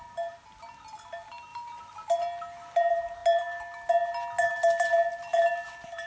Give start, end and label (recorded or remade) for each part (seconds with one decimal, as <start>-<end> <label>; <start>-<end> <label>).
0.0-6.1 recorded